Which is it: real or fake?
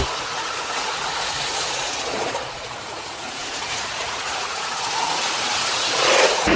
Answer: fake